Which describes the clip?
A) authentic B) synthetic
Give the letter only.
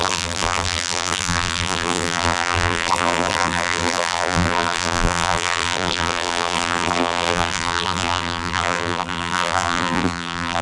B